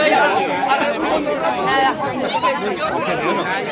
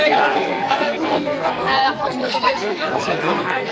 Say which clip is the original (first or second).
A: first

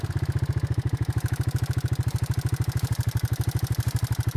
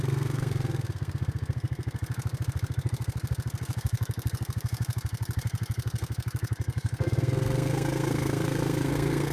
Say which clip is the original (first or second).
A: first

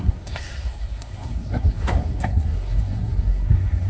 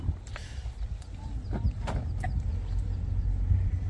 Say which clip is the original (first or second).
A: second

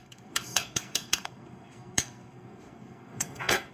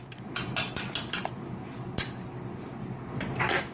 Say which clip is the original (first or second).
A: second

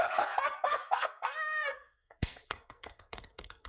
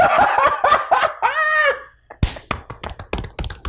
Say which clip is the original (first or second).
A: second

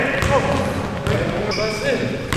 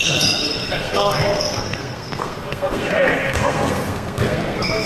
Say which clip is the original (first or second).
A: first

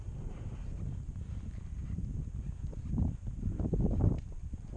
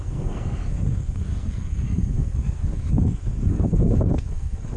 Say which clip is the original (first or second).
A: first